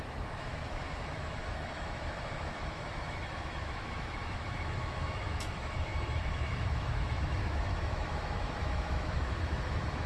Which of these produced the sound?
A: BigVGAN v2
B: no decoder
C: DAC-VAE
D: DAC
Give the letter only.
C